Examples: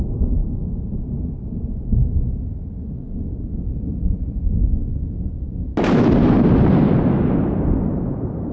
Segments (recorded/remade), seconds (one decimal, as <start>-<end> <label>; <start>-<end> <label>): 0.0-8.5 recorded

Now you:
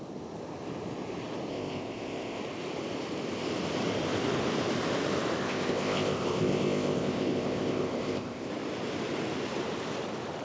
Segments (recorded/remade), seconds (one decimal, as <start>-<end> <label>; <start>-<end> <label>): 0.0-1.5 recorded; 1.5-2.4 remade; 2.4-5.4 recorded; 5.4-8.5 remade; 8.5-10.4 recorded

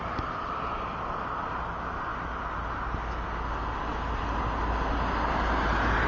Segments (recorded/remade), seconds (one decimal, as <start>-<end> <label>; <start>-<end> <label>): 0.0-6.1 recorded

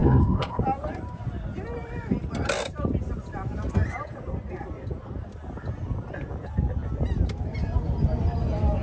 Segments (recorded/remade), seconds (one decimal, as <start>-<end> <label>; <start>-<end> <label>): 0.0-0.6 remade; 0.6-8.8 recorded